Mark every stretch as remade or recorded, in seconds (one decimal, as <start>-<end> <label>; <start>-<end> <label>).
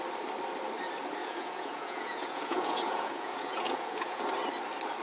0.0-1.2 recorded; 1.2-4.2 remade; 4.2-5.0 recorded